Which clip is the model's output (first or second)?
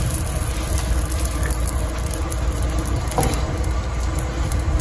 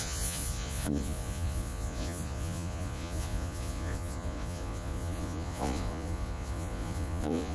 second